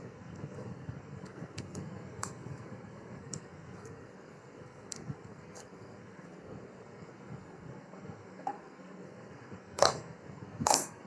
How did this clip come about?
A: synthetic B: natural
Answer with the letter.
A